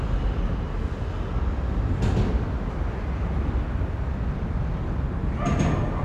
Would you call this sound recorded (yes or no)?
yes